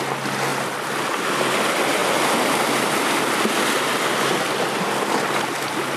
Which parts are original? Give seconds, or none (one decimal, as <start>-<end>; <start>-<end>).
0.0-6.0

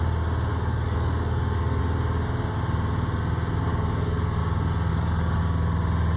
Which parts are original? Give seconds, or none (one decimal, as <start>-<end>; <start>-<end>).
0.0-0.5; 1.8-3.7; 4.4-4.9; 5.4-6.2

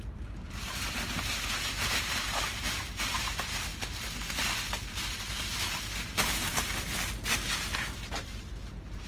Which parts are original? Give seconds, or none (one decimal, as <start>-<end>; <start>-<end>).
3.7-4.9; 6.5-8.2

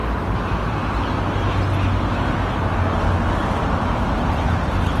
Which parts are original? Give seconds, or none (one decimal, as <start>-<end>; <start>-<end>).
0.5-3.4; 4.3-5.0